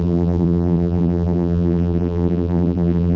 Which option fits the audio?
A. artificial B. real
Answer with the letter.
A